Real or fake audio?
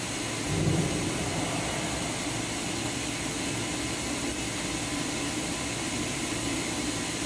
real